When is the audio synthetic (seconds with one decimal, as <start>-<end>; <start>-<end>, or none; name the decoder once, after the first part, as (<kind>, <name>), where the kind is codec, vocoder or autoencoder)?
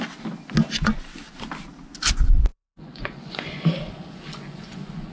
2.5-5.1 (vocoder, Vocos)